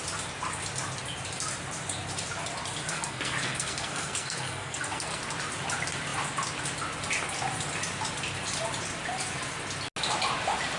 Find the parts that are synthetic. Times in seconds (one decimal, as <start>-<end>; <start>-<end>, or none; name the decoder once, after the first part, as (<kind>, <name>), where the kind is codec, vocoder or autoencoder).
2.9-5.2 (codec, SNAC)